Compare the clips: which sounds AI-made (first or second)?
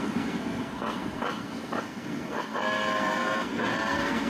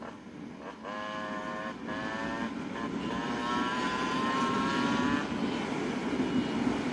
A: first